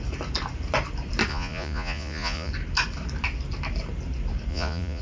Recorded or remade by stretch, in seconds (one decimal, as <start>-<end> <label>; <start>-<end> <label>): 0.0-1.3 recorded; 1.3-2.5 remade; 2.5-4.5 recorded; 4.5-5.0 remade